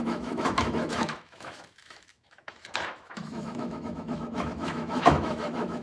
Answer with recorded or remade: remade